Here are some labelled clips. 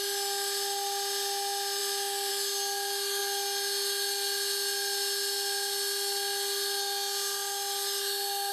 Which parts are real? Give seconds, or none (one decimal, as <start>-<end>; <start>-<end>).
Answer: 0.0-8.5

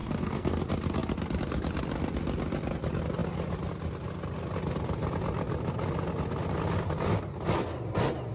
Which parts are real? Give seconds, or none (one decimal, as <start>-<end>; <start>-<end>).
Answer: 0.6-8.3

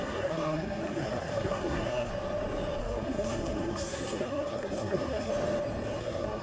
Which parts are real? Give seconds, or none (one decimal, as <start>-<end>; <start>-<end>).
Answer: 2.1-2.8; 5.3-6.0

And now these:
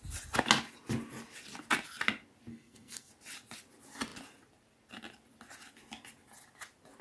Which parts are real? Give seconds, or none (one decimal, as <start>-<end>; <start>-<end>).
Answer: 0.0-2.5; 3.1-7.0

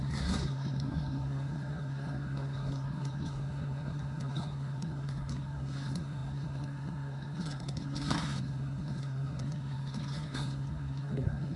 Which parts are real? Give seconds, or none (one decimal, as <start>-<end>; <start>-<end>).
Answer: none

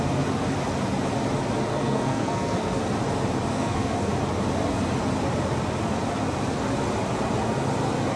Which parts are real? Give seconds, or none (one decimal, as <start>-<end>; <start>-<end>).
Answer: 0.0-1.7; 2.8-3.5; 4.1-8.2

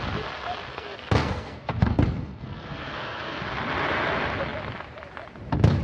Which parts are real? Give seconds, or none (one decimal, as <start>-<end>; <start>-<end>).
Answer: 0.0-0.7; 3.4-5.8

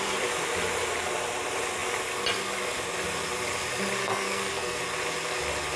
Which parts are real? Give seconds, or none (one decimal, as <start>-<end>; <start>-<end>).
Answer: 0.0-4.0; 4.8-5.8